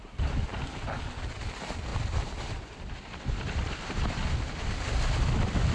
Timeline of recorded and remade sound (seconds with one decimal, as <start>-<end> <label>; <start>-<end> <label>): 0.0-0.5 remade; 0.5-1.3 recorded; 1.3-1.9 remade; 1.9-2.6 recorded; 2.6-5.7 remade